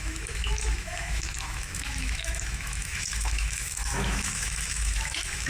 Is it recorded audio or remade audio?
remade